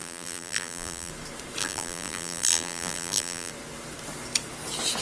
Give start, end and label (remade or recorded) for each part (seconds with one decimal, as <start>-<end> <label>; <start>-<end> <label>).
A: 0.0-1.1 remade; 1.1-1.6 recorded; 1.6-3.5 remade; 3.5-5.0 recorded